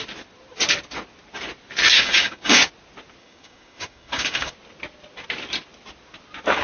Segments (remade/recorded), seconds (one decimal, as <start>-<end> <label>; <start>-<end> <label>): 0.0-1.9 recorded; 1.9-2.6 remade; 2.6-3.2 recorded; 3.2-4.5 remade; 4.5-6.6 recorded